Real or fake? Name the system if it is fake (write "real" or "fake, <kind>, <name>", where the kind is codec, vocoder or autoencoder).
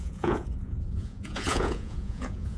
fake, vocoder, Vocos